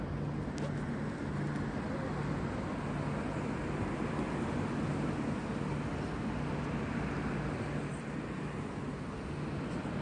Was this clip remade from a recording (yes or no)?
no